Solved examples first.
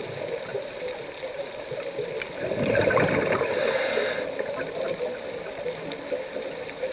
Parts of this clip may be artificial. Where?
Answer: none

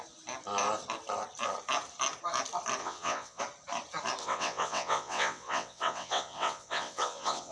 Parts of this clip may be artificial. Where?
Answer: 2.8-3.4; 4.2-7.5